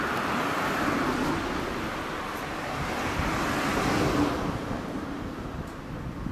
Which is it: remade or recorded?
recorded